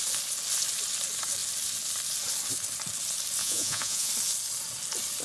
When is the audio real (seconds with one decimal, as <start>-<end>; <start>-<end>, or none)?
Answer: 0.0-3.4; 4.1-5.2